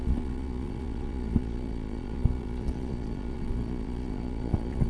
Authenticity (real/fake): fake